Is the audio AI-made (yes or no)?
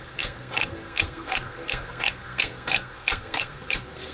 yes